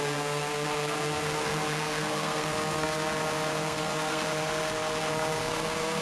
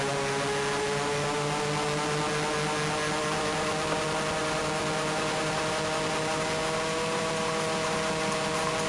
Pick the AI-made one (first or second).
first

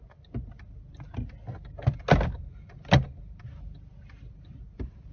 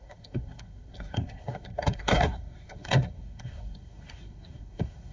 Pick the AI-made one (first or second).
second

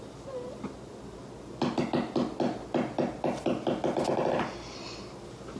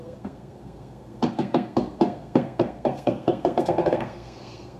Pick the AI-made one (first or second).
second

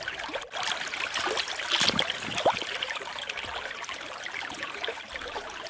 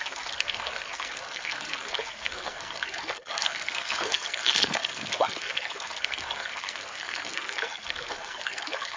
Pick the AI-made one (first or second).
second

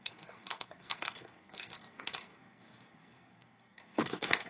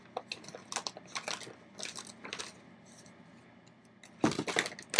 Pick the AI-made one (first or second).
first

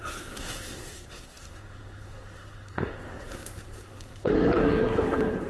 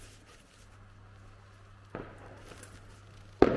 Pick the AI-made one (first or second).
first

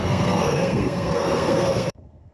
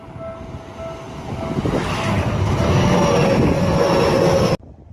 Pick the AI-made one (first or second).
first